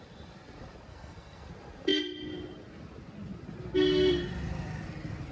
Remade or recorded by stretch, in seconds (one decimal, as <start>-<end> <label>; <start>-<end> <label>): 0.0-0.9 recorded; 0.9-1.5 remade; 1.5-5.3 recorded